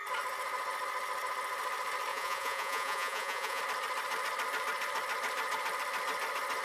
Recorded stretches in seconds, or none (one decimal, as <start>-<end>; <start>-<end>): 0.0-2.1; 3.6-6.6

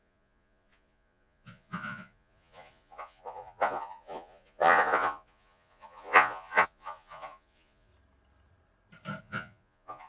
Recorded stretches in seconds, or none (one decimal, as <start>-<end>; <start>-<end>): 7.9-9.2